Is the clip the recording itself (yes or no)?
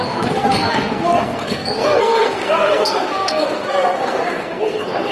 no